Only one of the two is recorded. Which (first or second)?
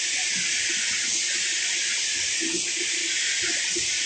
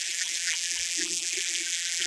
first